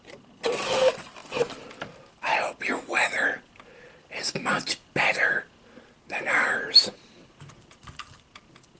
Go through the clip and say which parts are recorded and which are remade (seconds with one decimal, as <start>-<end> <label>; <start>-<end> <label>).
0.0-8.8 recorded